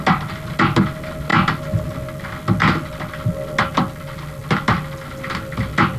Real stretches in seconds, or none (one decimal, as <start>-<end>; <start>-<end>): 0.0-6.0